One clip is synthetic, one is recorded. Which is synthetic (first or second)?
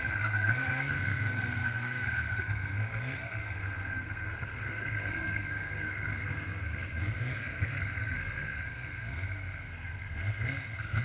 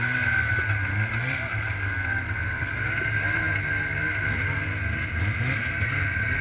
first